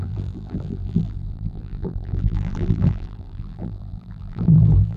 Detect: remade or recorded remade